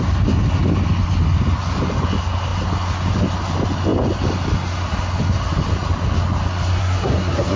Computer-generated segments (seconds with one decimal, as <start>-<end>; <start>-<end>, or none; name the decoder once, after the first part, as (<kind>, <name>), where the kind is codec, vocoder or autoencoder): 6.8-7.6 (codec, SNAC)